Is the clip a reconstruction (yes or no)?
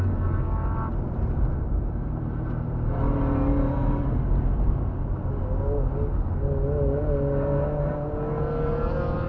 no